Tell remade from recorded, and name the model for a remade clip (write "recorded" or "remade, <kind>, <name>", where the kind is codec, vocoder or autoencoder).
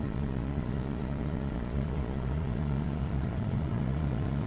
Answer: remade, vocoder, Vocos